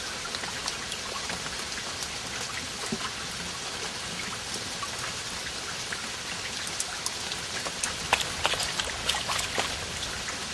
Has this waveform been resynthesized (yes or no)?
no